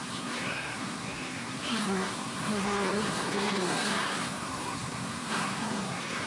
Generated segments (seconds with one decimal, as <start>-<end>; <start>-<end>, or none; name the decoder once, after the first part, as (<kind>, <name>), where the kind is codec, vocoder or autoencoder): 0.0-6.3 (codec, SNAC)